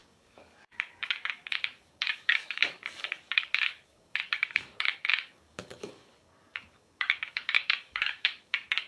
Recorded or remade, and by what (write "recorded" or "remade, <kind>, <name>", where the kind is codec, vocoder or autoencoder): remade, codec, DAC